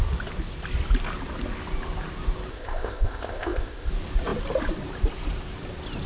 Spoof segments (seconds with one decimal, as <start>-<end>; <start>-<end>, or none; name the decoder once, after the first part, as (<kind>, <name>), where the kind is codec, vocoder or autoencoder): 2.5-3.9 (codec, ZipCodec)